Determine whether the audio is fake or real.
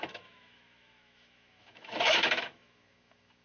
fake